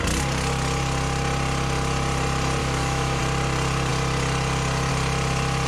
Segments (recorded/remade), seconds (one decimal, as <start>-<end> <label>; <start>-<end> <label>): 0.0-2.6 recorded; 2.6-3.2 remade; 3.2-5.7 recorded

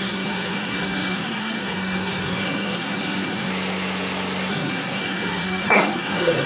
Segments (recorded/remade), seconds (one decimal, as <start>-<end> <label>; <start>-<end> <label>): 0.0-3.5 remade; 3.5-4.5 recorded; 4.5-6.5 remade

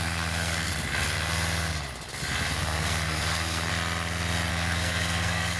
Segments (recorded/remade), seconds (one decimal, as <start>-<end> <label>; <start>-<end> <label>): 0.0-0.7 remade; 0.7-2.6 recorded; 2.6-3.7 remade; 3.7-4.5 recorded; 4.5-5.6 remade

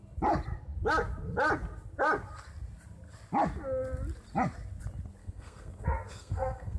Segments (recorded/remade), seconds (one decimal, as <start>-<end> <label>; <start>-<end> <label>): 0.0-5.2 recorded; 5.2-6.8 remade

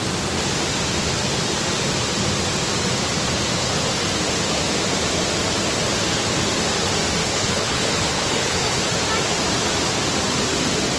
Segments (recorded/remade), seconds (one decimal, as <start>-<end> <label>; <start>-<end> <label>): 0.0-7.2 recorded; 7.2-8.8 remade; 8.8-11.0 recorded

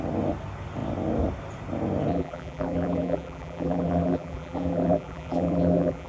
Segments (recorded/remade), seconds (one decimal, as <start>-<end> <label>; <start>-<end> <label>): 0.0-2.1 recorded; 2.1-6.1 remade